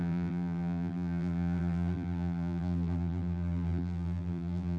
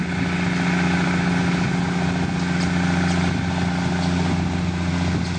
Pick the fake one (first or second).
first